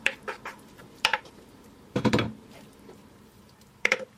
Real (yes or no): no